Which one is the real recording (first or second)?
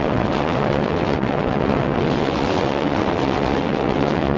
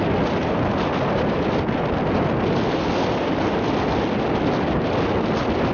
second